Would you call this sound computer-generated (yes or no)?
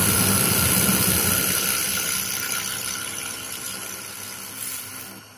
no